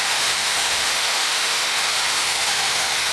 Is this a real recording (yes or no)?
no